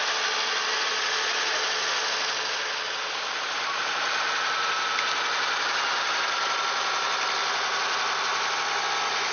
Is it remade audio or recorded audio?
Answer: recorded